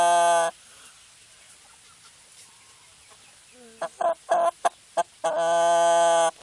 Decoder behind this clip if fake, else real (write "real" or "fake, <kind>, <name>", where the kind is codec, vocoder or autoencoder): real